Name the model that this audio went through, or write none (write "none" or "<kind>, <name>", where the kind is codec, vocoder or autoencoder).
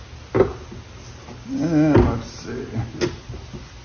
none